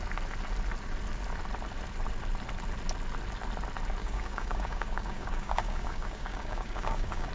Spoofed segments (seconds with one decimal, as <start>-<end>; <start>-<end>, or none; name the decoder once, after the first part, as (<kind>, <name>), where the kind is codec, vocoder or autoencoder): 4.0-7.3 (codec, DAC)

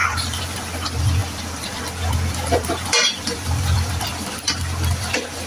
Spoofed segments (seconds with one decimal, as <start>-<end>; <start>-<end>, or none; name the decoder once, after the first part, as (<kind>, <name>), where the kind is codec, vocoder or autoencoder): 0.0-0.6 (vocoder, BigVGAN v2); 1.2-1.8; 3.0-4.1